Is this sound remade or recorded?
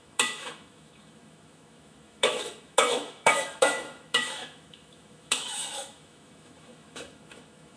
remade